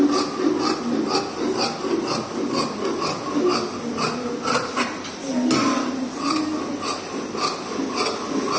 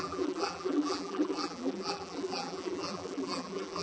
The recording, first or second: first